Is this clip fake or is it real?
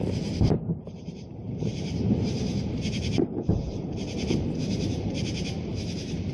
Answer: fake